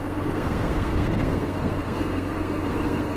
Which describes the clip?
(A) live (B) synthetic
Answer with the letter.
B